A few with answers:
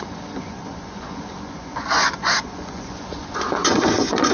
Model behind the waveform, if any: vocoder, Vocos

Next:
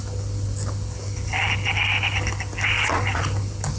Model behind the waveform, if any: none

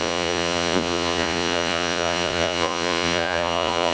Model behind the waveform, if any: vocoder, Vocos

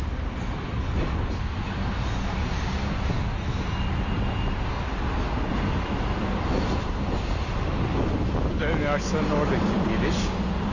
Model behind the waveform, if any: none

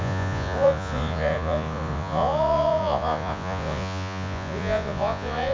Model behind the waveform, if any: vocoder, Vocos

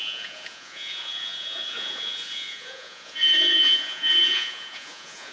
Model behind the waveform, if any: vocoder, Vocos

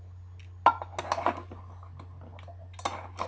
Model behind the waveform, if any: none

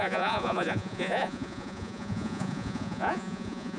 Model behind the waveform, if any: vocoder, Vocos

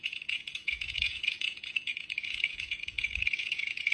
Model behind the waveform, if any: vocoder, Vocos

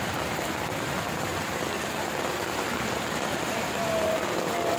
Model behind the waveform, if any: none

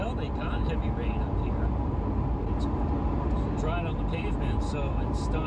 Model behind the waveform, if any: none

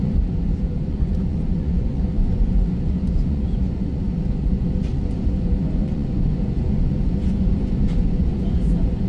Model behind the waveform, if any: vocoder, Vocos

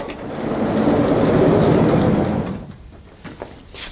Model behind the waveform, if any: none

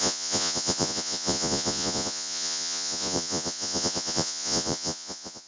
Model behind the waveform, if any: vocoder, Vocos